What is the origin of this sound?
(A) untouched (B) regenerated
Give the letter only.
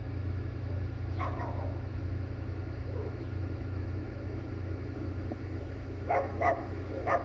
B